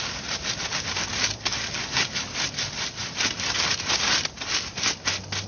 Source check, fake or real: real